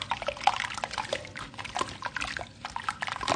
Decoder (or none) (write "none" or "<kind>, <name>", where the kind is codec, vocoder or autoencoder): none